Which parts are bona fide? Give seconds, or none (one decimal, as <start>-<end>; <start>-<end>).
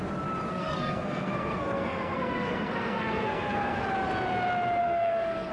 0.0-0.5; 3.8-4.8